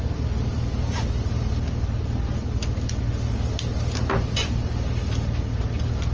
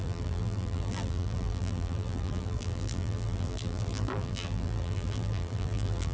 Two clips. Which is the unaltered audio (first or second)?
first